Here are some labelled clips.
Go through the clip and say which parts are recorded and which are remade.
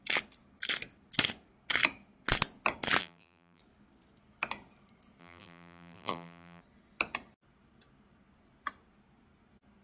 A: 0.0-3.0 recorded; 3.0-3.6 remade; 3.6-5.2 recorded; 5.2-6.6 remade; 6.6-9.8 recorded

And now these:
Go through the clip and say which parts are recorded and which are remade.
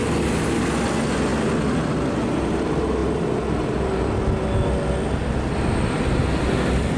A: 0.0-7.0 recorded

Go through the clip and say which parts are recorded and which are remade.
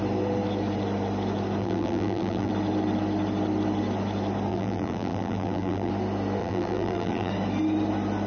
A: 0.0-1.6 recorded; 1.6-2.5 remade; 2.5-4.5 recorded; 4.5-5.9 remade; 5.9-6.4 recorded; 6.4-7.3 remade; 7.3-8.3 recorded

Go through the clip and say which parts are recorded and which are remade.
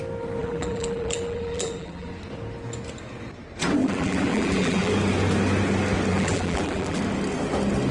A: 0.0-0.4 recorded; 0.4-2.1 remade; 2.1-3.8 recorded; 3.8-4.9 remade; 4.9-6.1 recorded; 6.1-7.0 remade; 7.0-7.9 recorded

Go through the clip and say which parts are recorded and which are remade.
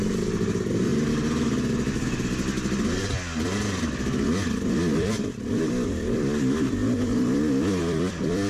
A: 0.0-0.9 remade; 0.9-3.0 recorded; 3.0-8.5 remade